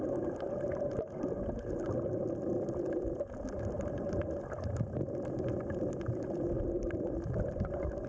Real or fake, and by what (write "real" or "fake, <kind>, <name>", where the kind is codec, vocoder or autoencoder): real